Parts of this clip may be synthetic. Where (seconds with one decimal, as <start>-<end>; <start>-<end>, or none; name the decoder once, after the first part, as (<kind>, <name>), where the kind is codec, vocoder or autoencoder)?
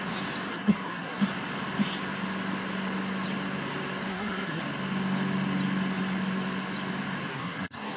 0.5-1.2 (codec, SNAC); 4.1-4.6; 7.3-8.0